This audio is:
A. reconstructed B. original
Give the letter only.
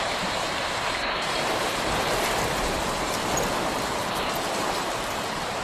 A